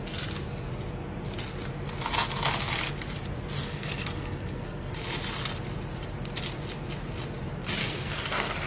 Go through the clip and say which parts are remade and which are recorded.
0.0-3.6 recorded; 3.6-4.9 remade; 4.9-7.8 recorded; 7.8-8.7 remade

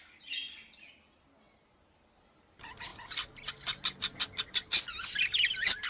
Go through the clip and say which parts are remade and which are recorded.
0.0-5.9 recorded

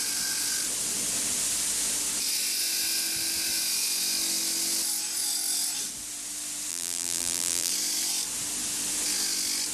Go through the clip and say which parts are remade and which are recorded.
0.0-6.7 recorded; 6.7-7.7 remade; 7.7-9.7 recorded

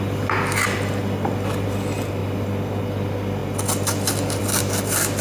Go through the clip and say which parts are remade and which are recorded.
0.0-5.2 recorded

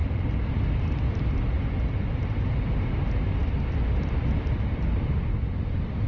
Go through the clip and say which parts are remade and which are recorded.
0.0-1.2 remade; 1.2-3.4 recorded; 3.4-6.1 remade

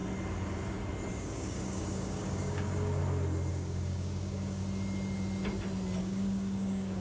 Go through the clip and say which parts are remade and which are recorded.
0.0-1.1 recorded; 1.1-3.0 remade; 3.0-3.5 recorded; 3.5-4.6 remade; 4.6-6.0 recorded; 6.0-7.0 remade

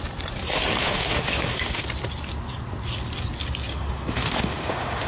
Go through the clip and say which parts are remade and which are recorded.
0.0-0.8 recorded; 0.8-1.8 remade; 1.8-3.7 recorded; 3.7-5.1 remade